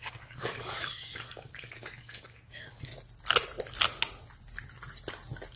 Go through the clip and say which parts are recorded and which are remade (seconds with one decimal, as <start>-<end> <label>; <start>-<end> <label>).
0.0-2.9 remade; 2.9-5.6 recorded

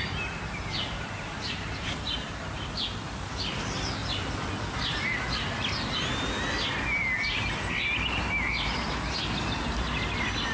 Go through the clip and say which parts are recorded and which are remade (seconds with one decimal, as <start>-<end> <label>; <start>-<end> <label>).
0.0-10.5 recorded

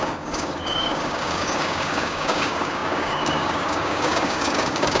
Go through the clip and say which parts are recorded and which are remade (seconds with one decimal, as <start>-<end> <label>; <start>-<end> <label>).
0.0-5.0 remade

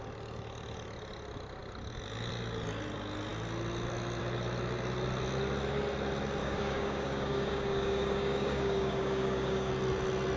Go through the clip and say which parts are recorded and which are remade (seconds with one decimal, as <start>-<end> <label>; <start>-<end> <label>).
0.0-6.4 recorded; 6.4-9.7 remade; 9.7-10.4 recorded

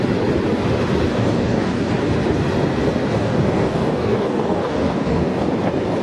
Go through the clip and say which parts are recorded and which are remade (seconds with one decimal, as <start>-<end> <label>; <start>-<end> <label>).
0.0-1.1 recorded; 1.1-1.9 remade; 1.9-3.1 recorded; 3.1-5.5 remade; 5.5-6.0 recorded

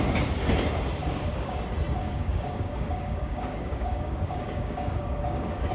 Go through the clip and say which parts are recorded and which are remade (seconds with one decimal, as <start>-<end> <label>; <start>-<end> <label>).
0.0-1.0 recorded; 1.0-1.6 remade; 1.6-2.0 recorded; 2.0-5.7 remade

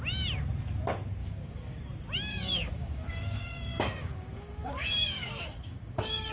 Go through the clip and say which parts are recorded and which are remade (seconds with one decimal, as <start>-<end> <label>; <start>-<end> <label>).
0.0-1.2 recorded; 1.2-1.8 remade; 1.8-2.3 recorded; 2.3-6.3 remade